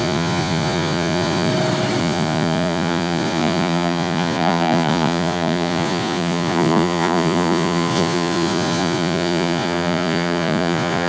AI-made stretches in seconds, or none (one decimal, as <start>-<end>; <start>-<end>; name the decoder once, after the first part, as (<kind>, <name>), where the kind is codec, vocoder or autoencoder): 0.0-1.5 (vocoder, Vocos); 2.0-11.1